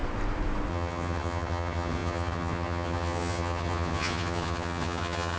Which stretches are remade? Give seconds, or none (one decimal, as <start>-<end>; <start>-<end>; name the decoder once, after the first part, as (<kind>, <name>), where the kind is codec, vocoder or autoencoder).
0.7-5.4 (vocoder, HiFi-GAN)